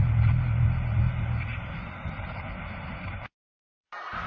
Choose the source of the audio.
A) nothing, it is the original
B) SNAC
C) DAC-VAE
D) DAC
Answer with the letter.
A